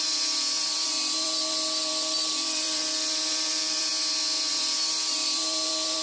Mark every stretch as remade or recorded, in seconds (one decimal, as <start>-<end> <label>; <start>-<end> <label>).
0.0-3.9 remade; 3.9-4.5 recorded; 4.5-6.0 remade